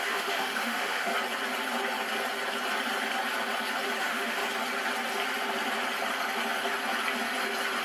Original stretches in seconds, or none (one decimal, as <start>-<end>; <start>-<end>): 1.1-4.0; 4.4-7.8